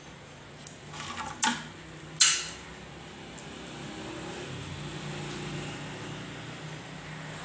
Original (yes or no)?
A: yes